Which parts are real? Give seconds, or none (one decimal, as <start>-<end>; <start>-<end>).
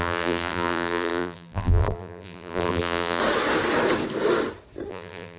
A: 3.2-4.9